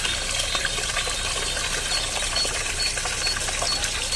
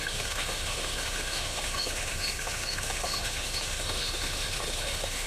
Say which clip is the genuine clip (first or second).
first